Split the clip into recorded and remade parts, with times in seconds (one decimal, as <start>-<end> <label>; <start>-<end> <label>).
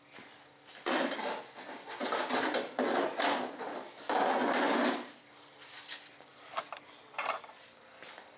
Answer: 0.0-6.3 recorded; 6.3-7.0 remade; 7.0-8.4 recorded